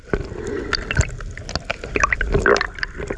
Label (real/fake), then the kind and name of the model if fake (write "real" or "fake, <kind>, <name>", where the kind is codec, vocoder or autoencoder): real